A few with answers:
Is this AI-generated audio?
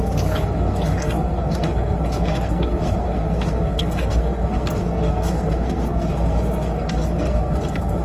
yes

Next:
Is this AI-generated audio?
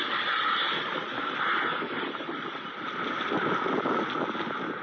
no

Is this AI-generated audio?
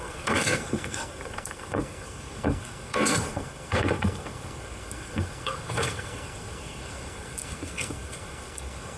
yes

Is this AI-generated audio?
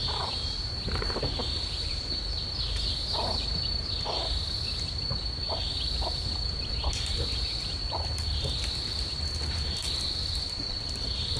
no